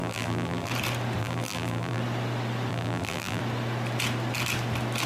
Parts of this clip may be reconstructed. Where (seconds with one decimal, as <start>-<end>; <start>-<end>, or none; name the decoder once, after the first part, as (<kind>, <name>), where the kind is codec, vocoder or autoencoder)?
0.0-0.7 (vocoder, BigVGAN v2); 1.2-2.0; 2.7-3.4

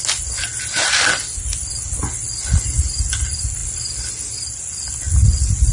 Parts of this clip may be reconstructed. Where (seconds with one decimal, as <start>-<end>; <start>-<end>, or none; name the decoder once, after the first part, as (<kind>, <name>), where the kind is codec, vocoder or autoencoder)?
none

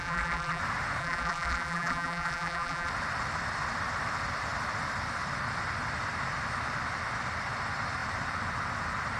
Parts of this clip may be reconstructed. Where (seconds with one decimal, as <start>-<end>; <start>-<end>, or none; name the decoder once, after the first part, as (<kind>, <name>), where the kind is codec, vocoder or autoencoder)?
0.0-0.6 (vocoder, BigVGAN v2); 1.0-2.9

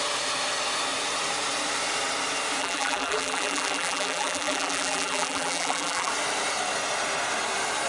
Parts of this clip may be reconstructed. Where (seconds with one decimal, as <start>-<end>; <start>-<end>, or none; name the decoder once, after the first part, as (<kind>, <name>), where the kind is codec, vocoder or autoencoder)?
2.6-6.1 (vocoder, BigVGAN v2)

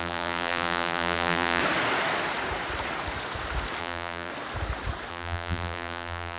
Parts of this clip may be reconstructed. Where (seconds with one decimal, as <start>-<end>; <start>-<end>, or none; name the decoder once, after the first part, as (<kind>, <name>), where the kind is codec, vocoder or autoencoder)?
0.0-1.6 (vocoder, BigVGAN v2); 3.8-4.3; 5.1-6.4